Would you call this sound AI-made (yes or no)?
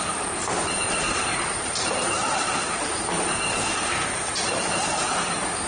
yes